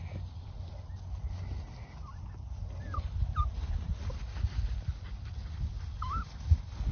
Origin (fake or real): real